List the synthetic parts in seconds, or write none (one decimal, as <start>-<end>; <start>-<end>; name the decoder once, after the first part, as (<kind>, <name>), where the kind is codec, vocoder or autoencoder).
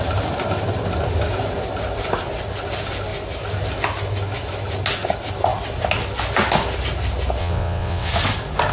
7.4-8.1 (vocoder, WaveNeXt)